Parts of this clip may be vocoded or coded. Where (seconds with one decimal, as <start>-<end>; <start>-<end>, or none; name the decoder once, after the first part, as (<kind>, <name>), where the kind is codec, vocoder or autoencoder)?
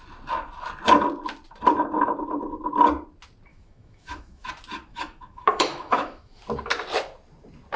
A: 3.5-4.5 (autoencoder, DAC-VAE); 4.9-6.4